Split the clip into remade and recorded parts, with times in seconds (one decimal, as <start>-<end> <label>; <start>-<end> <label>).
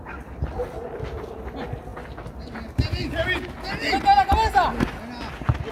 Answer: 0.0-5.7 recorded